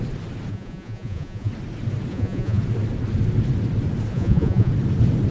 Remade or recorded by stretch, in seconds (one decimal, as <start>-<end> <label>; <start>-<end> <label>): 0.0-0.5 recorded; 0.5-1.5 remade; 1.5-2.1 recorded; 2.1-2.6 remade; 2.6-4.1 recorded; 4.1-4.7 remade; 4.7-5.3 recorded